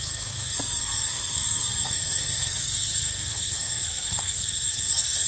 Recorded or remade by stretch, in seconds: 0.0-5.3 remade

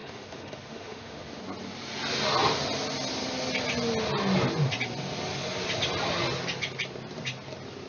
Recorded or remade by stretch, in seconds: 0.0-1.4 remade; 1.4-7.9 recorded

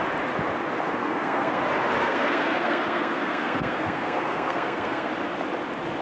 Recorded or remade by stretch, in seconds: 0.0-1.0 recorded; 1.0-1.6 remade; 1.6-2.0 recorded; 2.0-5.1 remade; 5.1-6.0 recorded

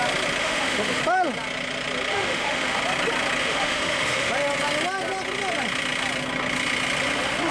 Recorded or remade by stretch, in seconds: 0.0-0.4 recorded; 0.4-1.0 remade; 1.0-2.1 recorded; 2.1-2.8 remade; 2.8-3.4 recorded; 3.4-4.3 remade; 4.3-7.5 recorded

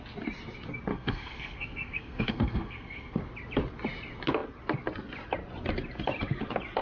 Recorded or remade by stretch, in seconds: 0.0-0.9 recorded; 0.9-3.2 remade; 3.2-6.8 recorded

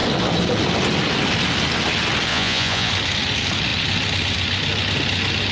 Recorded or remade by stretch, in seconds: 0.0-2.3 recorded; 2.3-2.9 remade; 2.9-5.5 recorded

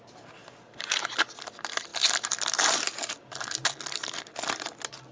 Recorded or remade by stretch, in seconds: 0.0-5.1 recorded

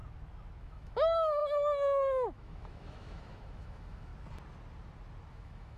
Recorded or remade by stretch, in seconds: 0.0-0.6 recorded; 0.6-4.1 remade; 4.1-5.3 recorded; 5.3-5.8 remade